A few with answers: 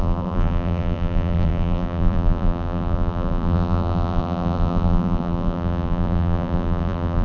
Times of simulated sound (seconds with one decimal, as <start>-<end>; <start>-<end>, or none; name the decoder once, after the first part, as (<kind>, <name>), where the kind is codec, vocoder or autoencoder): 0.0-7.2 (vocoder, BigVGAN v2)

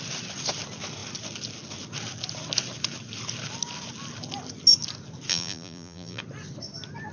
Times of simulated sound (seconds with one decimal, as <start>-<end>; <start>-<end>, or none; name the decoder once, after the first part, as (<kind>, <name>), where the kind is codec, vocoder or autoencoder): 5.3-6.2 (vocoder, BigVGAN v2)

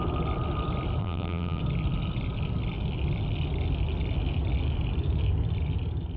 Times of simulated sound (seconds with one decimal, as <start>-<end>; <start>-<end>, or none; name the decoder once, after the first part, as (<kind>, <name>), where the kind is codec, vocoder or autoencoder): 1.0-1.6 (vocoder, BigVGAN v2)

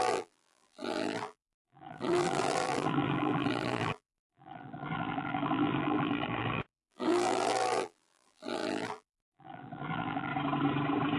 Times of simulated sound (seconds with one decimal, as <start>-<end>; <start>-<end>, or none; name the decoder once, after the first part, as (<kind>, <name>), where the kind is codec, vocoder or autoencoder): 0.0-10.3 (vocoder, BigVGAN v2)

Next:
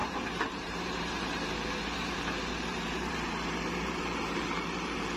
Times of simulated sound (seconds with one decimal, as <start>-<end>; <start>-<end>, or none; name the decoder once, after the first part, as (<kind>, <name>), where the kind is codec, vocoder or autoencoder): 0.0-5.2 (vocoder, BigVGAN v2)

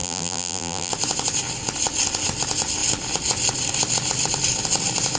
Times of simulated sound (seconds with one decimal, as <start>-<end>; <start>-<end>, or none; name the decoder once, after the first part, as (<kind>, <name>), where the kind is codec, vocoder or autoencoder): 0.0-0.9 (vocoder, BigVGAN v2)

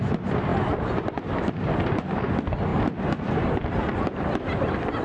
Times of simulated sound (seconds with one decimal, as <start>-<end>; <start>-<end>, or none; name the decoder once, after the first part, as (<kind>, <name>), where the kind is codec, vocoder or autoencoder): none

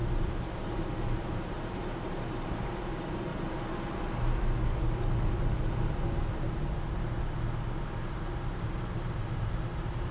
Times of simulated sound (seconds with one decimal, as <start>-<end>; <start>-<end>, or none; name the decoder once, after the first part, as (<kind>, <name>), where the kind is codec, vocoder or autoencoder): 0.0-3.3 (vocoder, BigVGAN v2); 8.0-10.1